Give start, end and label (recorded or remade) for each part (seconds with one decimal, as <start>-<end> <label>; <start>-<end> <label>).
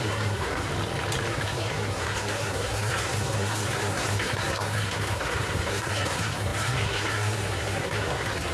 0.0-0.7 remade; 0.7-1.3 recorded; 1.3-8.5 remade